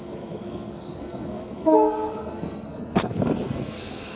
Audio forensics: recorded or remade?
remade